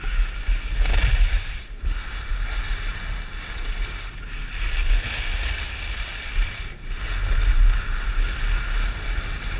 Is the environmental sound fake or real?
real